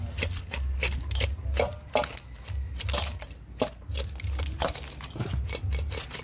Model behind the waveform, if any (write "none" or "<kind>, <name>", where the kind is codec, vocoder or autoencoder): none